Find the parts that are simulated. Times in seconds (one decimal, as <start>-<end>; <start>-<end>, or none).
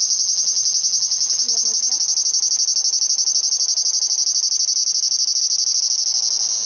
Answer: none